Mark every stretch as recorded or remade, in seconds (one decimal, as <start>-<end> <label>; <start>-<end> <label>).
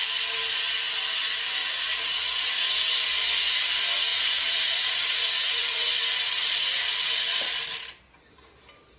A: 0.0-1.6 recorded; 1.6-2.7 remade; 2.7-4.1 recorded; 4.1-6.0 remade; 6.0-9.0 recorded